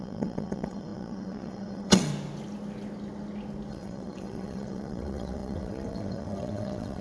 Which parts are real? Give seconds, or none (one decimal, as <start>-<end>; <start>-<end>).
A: 2.1-3.7